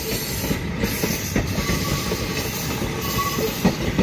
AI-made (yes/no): no